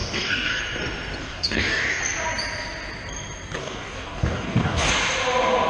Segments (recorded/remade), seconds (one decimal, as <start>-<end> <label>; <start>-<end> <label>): 0.0-0.6 remade; 0.6-1.2 recorded; 1.2-2.0 remade; 2.0-3.6 recorded; 3.6-4.9 remade; 4.9-5.7 recorded